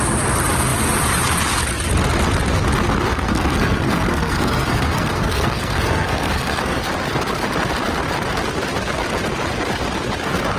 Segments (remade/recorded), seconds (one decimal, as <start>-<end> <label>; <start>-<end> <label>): 0.0-3.1 recorded; 3.1-6.8 remade; 6.8-10.6 recorded

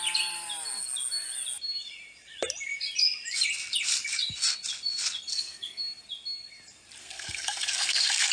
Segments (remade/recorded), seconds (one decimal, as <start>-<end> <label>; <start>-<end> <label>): 0.0-5.3 recorded; 5.3-5.8 remade; 5.8-7.0 recorded; 7.0-8.3 remade

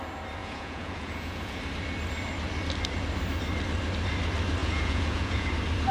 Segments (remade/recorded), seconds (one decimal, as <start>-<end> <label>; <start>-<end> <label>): 0.0-0.4 recorded; 0.4-1.6 remade; 1.6-4.6 recorded; 4.6-5.5 remade; 5.5-5.9 recorded

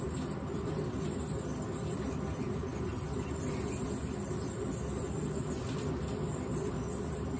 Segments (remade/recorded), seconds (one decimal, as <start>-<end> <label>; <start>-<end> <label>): 0.0-7.4 recorded

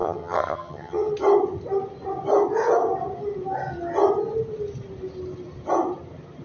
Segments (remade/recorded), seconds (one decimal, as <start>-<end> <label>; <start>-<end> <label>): 0.0-1.1 remade; 1.1-6.4 recorded

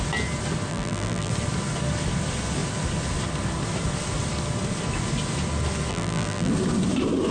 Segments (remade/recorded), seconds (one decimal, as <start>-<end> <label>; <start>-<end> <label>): 0.0-0.7 recorded; 0.7-1.3 remade; 1.3-5.9 recorded; 5.9-6.5 remade; 6.5-7.3 recorded